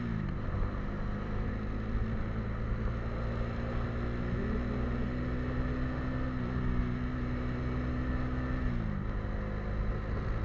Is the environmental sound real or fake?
real